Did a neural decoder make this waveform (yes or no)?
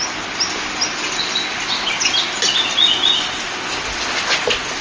no